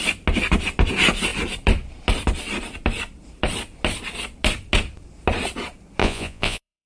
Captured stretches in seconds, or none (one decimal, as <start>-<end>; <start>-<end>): 0.0-6.0